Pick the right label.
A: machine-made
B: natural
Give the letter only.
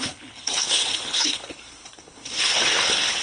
A